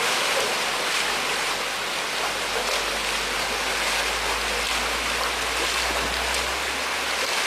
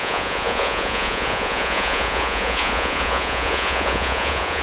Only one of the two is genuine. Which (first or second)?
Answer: first